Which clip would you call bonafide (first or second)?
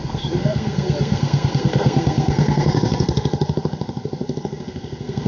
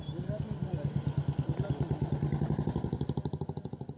second